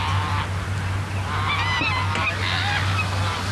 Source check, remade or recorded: recorded